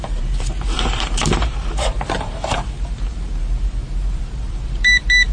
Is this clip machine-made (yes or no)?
yes